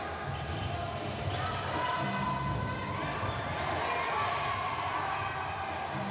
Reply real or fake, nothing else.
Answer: real